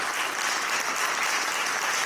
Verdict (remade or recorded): recorded